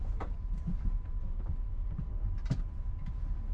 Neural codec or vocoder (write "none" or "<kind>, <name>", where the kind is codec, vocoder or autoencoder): vocoder, BigVGAN v2